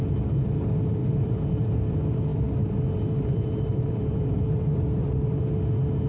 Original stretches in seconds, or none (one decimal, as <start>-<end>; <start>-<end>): 0.0-1.0; 1.8-2.3; 5.4-6.1